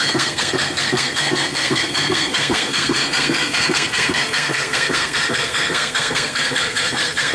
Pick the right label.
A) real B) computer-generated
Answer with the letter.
B